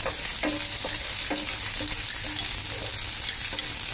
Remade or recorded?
recorded